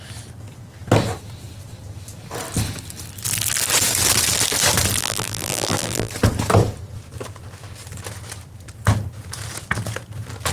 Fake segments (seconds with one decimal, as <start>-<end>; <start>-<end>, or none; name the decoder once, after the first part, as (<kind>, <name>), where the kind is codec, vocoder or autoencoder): 5.0-6.1 (vocoder, BigVGAN v2)